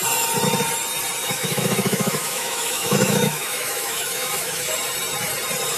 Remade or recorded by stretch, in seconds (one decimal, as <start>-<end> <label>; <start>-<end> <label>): 0.0-1.2 recorded; 1.2-4.7 remade; 4.7-5.8 recorded